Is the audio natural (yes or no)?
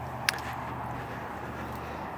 yes